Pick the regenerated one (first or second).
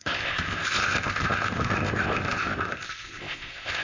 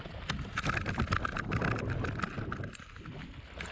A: first